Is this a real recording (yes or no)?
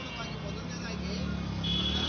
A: yes